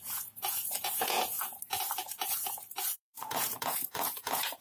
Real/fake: fake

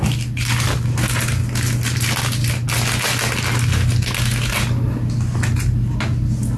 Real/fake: real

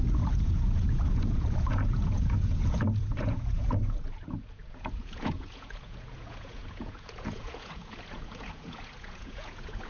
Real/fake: fake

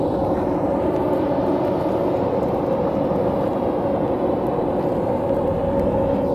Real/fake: real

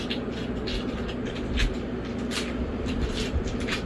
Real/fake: real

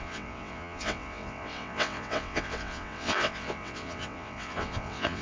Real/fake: fake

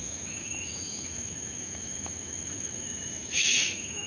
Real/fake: fake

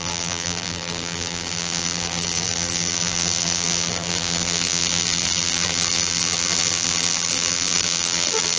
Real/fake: fake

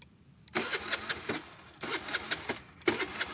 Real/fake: real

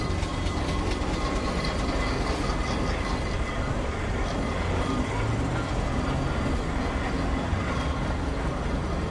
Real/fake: real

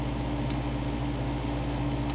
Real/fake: real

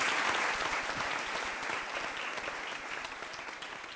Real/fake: real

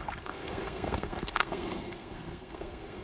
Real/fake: fake